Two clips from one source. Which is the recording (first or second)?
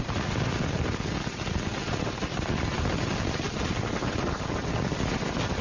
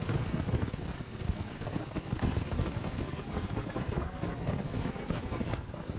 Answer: first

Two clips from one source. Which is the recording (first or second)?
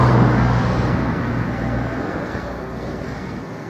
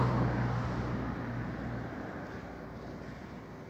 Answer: second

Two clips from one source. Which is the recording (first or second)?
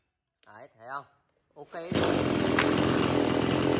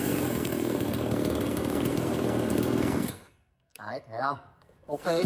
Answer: first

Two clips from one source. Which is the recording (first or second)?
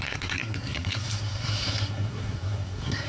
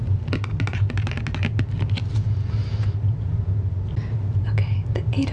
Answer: second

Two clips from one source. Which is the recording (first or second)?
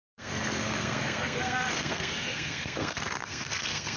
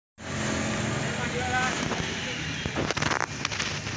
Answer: second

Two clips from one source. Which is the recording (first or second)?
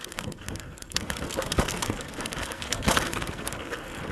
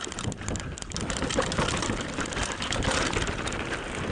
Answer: second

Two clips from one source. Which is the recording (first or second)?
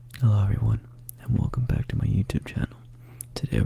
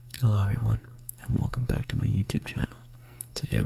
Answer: first